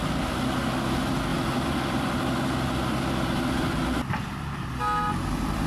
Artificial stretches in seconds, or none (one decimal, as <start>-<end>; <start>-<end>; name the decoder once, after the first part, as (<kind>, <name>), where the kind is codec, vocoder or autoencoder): 1.3-4.7 (vocoder, BigVGAN v2)